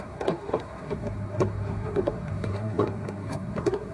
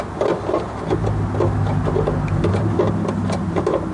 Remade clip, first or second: first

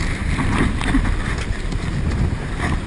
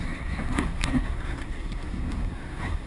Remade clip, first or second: second